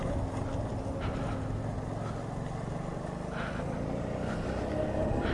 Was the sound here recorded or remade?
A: recorded